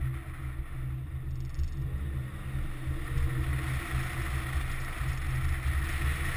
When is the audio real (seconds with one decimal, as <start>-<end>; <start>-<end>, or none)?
0.0-6.4